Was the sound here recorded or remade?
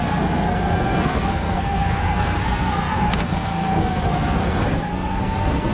remade